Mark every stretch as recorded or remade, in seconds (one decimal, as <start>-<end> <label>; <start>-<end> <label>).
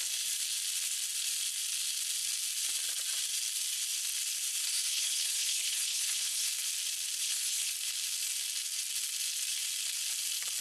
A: 0.0-4.9 recorded; 4.9-6.5 remade; 6.5-7.2 recorded; 7.2-7.7 remade; 7.7-10.6 recorded